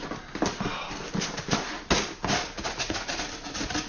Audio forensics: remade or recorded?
recorded